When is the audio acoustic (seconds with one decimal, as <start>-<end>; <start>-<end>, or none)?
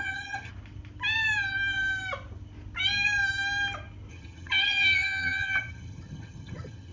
0.5-4.1